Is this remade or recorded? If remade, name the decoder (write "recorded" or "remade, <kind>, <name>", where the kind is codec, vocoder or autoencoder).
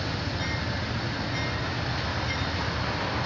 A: recorded